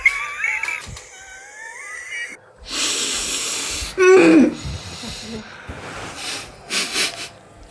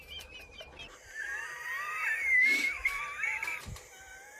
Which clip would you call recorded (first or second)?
first